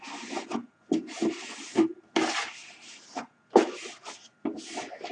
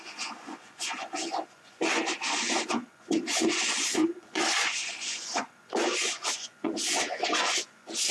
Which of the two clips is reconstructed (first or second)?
second